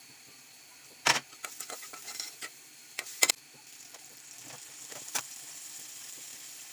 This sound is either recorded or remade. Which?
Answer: recorded